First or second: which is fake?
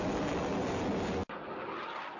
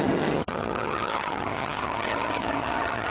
second